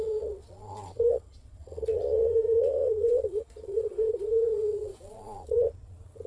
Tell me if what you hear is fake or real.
fake